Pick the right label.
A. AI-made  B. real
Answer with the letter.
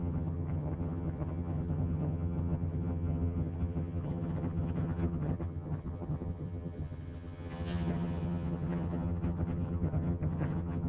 A